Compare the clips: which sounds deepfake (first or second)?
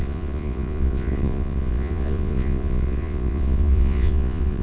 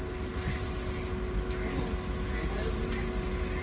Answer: first